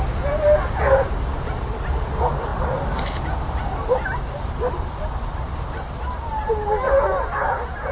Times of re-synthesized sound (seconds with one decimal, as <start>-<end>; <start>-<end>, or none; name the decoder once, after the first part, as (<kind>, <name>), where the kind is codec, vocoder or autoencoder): none